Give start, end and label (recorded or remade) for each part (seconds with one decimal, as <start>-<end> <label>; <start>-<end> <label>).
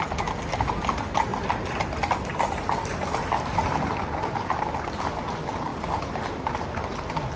0.0-7.4 recorded